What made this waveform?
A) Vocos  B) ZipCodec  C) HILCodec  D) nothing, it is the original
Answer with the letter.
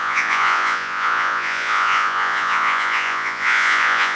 A